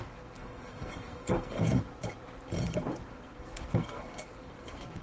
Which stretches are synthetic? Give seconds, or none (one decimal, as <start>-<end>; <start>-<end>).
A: 0.0-1.9; 3.0-5.0